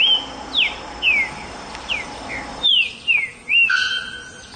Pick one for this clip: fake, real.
real